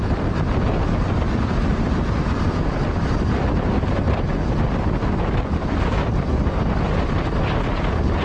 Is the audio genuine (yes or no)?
yes